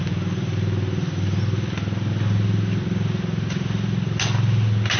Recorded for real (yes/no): yes